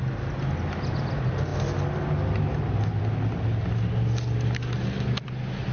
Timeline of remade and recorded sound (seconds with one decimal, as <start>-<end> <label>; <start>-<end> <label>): 0.0-5.7 recorded